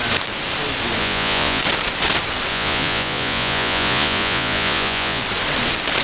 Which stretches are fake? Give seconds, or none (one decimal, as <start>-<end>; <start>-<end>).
1.0-1.6; 2.5-5.2